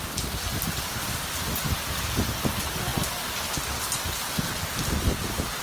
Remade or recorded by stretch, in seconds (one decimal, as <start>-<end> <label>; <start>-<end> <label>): 0.0-5.6 recorded